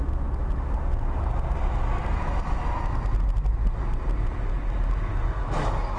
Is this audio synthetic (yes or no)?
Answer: no